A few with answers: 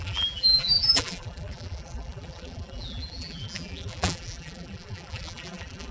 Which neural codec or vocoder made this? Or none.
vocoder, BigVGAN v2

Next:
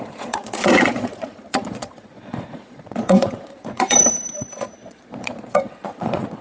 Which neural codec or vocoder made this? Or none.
vocoder, Vocos